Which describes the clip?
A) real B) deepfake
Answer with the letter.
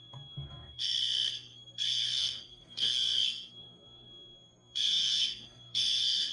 B